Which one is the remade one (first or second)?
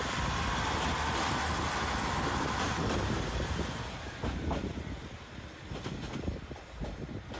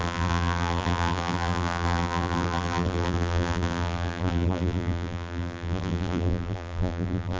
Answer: second